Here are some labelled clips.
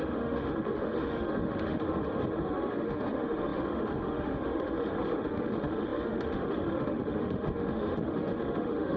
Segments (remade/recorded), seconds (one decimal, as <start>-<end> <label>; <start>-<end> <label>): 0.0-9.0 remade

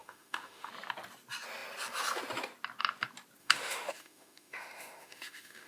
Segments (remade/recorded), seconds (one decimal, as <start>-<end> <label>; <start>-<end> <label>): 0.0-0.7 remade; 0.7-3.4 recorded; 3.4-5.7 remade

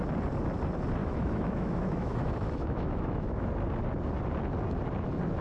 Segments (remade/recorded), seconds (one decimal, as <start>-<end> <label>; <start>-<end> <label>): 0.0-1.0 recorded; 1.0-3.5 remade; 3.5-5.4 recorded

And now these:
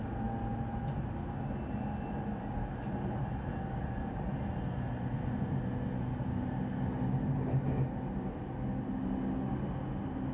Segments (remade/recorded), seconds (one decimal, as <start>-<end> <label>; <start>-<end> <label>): 0.0-10.3 recorded

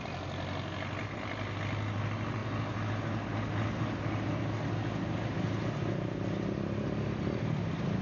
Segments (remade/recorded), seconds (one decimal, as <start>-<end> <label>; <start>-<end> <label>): 0.0-8.0 recorded

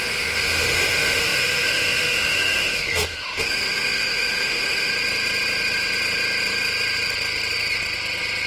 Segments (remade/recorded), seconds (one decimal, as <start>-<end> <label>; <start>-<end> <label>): 0.0-4.9 remade; 4.9-8.5 recorded